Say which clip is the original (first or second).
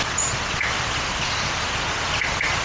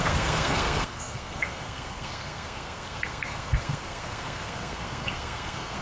first